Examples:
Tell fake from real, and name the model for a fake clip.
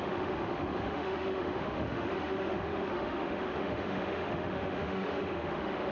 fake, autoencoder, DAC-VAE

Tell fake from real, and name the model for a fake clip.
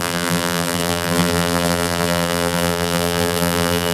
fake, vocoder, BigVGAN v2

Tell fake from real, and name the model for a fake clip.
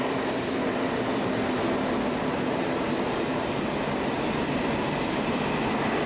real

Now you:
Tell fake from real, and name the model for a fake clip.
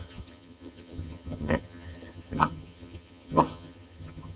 fake, vocoder, HiFi-GAN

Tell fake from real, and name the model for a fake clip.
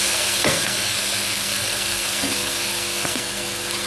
fake, codec, SNAC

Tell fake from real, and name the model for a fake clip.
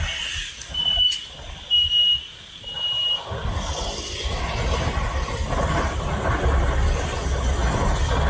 real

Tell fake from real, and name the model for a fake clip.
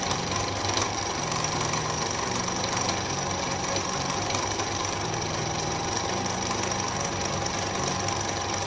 fake, vocoder, BigVGAN v2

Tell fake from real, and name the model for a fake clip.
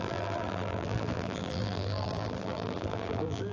fake, vocoder, BigVGAN v2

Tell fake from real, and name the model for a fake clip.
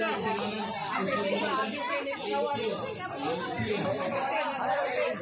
real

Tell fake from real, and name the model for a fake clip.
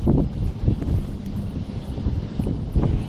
real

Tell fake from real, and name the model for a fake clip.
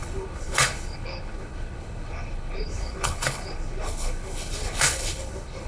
fake, codec, HILCodec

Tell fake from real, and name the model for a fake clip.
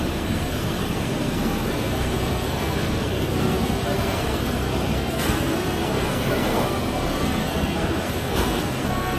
fake, codec, SNAC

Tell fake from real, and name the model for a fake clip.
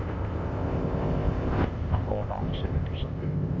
fake, codec, ZipCodec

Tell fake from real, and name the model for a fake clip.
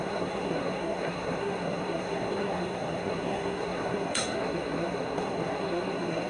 fake, codec, SNAC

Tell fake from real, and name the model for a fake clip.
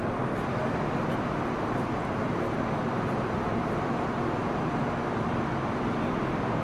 real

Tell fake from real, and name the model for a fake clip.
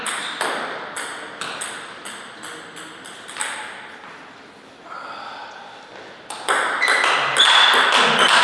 real